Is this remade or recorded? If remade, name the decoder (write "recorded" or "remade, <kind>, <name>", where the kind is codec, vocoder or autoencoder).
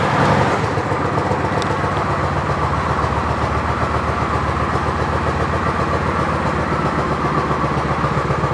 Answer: recorded